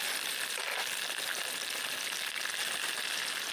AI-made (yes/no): no